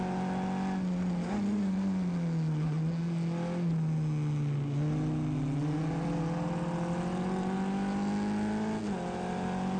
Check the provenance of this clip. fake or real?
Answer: real